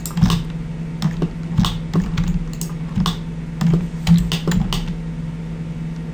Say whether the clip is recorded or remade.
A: recorded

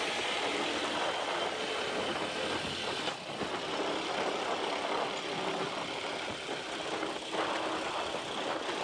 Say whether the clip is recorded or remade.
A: recorded